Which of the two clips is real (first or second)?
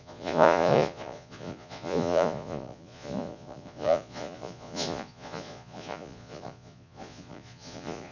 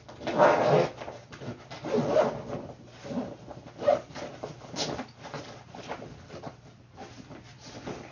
second